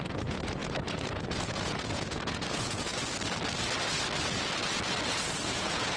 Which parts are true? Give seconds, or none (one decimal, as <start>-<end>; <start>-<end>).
2.9-5.5